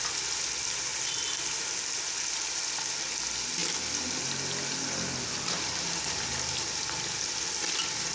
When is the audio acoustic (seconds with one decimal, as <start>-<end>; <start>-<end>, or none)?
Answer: 0.0-8.1